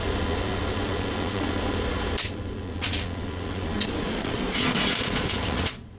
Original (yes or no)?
no